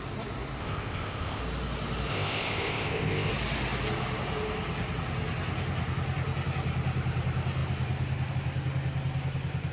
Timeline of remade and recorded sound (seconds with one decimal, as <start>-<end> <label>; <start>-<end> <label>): 0.0-0.6 recorded; 0.6-1.4 remade; 1.4-2.1 recorded; 2.1-3.3 remade; 3.3-9.7 recorded